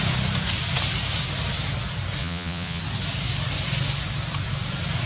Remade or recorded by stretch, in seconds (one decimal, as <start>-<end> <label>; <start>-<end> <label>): 0.0-2.2 recorded; 2.2-2.8 remade; 2.8-5.1 recorded